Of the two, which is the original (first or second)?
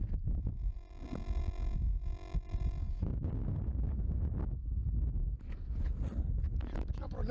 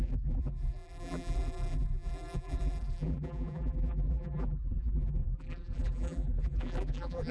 first